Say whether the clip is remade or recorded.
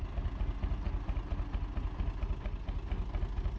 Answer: recorded